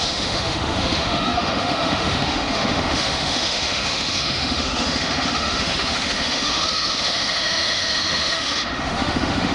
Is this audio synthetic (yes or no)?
yes